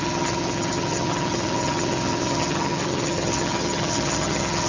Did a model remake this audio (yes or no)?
yes